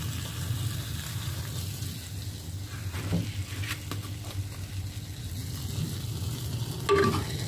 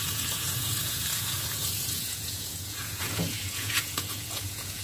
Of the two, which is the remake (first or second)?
second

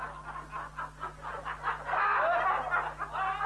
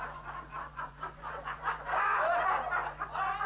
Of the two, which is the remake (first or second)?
second